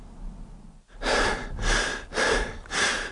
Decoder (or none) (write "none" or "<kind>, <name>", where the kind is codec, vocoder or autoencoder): none